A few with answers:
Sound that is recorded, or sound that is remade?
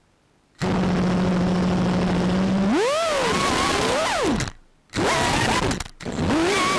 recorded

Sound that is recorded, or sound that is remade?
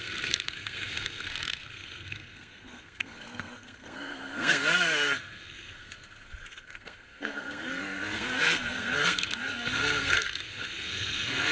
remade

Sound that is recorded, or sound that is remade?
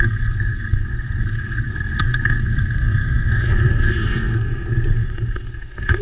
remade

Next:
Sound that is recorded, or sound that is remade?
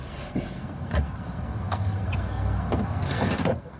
remade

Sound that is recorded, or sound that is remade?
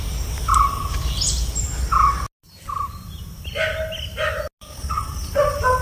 recorded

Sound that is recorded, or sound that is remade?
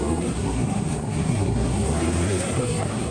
remade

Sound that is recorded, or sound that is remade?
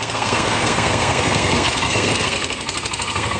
remade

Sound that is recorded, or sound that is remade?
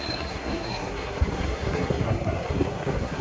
remade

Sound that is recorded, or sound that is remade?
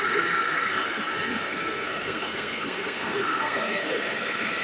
remade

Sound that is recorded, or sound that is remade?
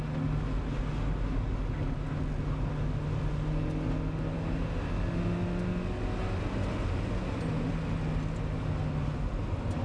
recorded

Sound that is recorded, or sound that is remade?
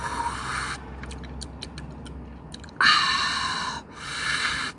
recorded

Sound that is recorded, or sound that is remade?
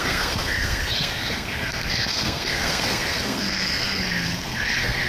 remade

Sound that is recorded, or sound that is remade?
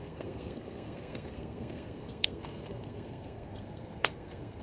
remade